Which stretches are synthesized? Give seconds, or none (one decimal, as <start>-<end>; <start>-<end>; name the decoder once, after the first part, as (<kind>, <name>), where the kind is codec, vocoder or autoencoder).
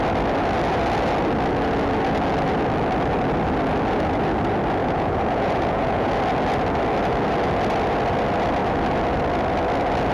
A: 4.8-6.1 (vocoder, Vocos)